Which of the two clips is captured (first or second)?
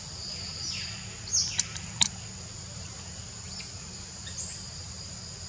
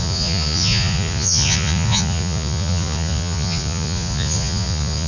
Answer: first